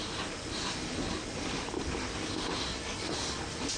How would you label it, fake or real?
real